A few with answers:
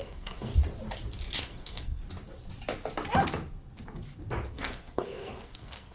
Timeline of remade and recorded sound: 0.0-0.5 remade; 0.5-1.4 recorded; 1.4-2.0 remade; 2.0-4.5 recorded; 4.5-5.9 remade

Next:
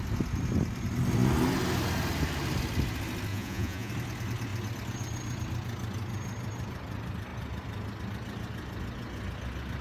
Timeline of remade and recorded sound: 0.0-3.3 recorded; 3.3-3.9 remade; 3.9-9.8 recorded